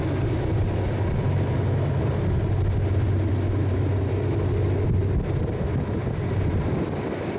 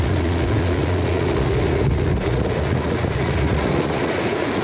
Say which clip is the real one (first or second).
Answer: first